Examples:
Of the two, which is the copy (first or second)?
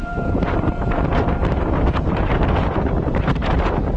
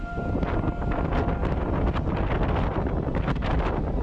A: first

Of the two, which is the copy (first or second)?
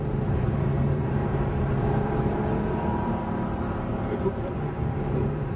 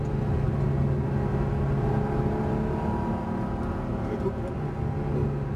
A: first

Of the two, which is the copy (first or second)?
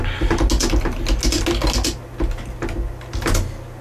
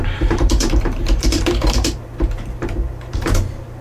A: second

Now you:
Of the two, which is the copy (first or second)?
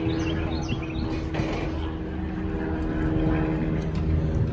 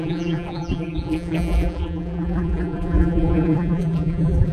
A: second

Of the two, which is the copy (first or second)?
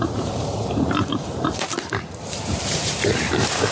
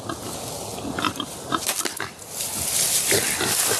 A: first